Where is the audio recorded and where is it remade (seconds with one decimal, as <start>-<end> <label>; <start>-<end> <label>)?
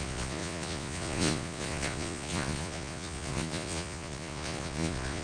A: 0.0-5.2 remade